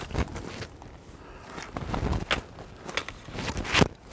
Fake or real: real